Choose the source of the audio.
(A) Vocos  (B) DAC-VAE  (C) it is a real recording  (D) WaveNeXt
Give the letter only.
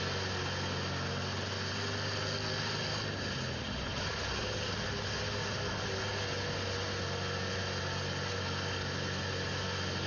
C